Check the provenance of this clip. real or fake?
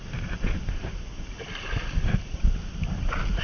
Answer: real